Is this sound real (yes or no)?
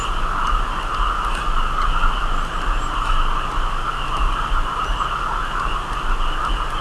yes